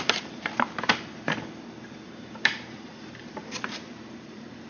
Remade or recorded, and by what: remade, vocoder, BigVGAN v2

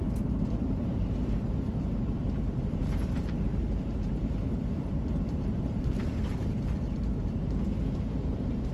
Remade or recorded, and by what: remade, vocoder, BigVGAN v2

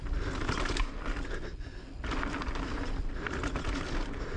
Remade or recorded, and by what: recorded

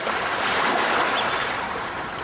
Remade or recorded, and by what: remade, vocoder, BigVGAN v2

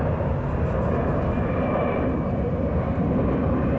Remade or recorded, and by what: remade, vocoder, BigVGAN v2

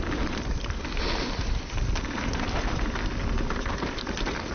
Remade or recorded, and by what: recorded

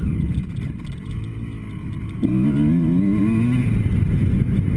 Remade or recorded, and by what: recorded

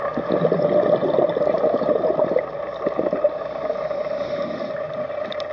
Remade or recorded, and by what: recorded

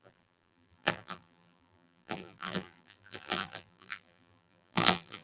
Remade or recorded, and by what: remade, vocoder, BigVGAN v2